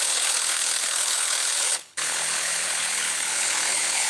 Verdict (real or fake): fake